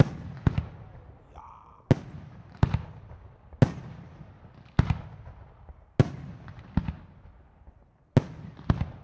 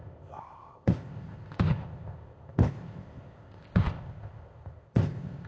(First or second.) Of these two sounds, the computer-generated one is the second